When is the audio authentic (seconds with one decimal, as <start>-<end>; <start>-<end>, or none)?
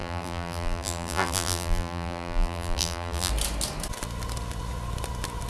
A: 3.3-5.5